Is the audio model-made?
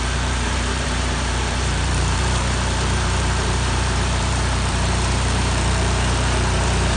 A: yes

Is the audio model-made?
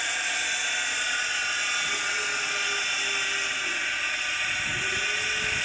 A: no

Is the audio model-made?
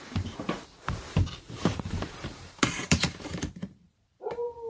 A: yes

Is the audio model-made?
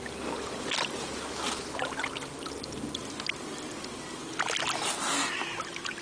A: no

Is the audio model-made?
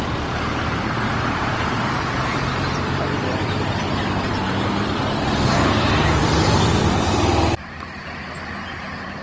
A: yes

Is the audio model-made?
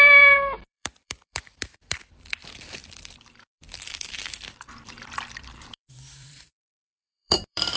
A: yes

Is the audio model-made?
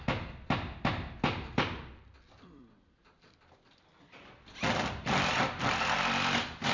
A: yes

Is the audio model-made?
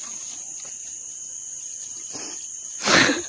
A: no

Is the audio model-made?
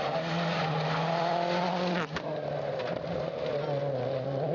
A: no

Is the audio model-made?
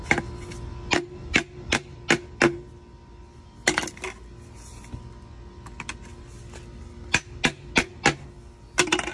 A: no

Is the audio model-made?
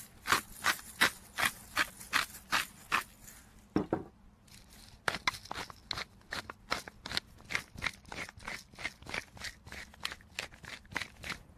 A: no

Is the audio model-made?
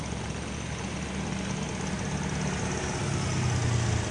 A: no